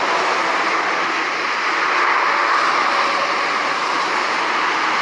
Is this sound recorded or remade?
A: recorded